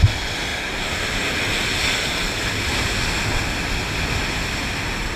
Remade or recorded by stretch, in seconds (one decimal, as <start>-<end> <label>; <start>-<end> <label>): 0.0-1.7 recorded; 1.7-2.9 remade; 2.9-5.2 recorded